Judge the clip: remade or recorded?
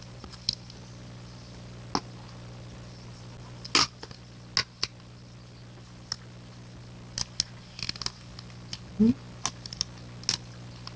recorded